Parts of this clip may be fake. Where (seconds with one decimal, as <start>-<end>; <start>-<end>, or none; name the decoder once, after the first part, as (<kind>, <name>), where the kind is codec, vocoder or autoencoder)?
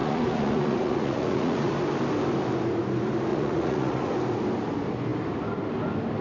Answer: 0.0-1.7 (vocoder, Vocos); 3.3-4.1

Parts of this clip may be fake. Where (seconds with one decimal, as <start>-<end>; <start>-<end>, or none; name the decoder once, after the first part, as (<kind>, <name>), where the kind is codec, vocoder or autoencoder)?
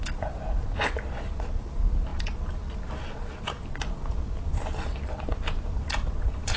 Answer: none